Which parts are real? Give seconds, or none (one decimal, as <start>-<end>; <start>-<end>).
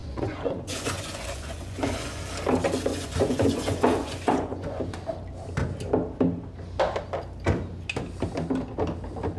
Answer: 2.2-2.9; 4.8-9.4